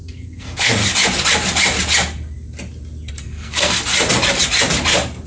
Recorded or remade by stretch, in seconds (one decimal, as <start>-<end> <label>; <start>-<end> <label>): 0.0-0.8 remade; 0.8-3.1 recorded; 3.1-3.9 remade; 3.9-5.3 recorded

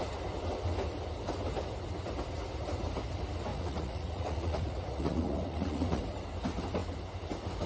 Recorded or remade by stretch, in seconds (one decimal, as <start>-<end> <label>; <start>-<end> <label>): 0.0-3.5 recorded; 3.5-6.0 remade; 6.0-7.7 recorded

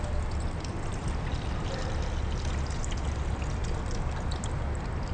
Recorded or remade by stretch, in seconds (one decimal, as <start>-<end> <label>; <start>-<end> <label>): 0.0-5.1 recorded

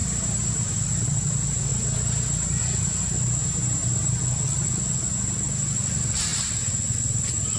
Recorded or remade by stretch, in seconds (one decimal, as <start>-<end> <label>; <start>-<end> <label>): 0.0-0.8 remade; 0.8-1.7 recorded; 1.7-2.6 remade; 2.6-3.4 recorded; 3.4-4.2 remade; 4.2-7.6 recorded

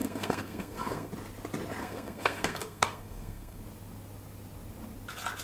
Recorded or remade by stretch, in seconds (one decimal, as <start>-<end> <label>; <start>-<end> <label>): 0.0-1.1 remade; 1.1-1.8 recorded; 1.8-3.6 remade; 3.6-5.4 recorded

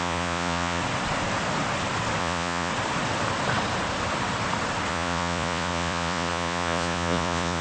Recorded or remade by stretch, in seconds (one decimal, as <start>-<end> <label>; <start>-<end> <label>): 0.0-0.8 remade; 0.8-2.2 recorded; 2.2-2.7 remade; 2.7-4.9 recorded; 4.9-7.6 remade